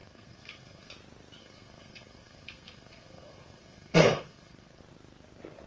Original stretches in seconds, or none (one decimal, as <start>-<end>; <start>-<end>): 0.9-1.4; 4.8-5.7